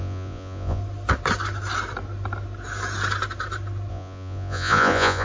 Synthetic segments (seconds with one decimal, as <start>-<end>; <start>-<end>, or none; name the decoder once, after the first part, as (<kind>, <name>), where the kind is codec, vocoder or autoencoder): 0.0-0.8 (vocoder, Vocos); 3.9-5.2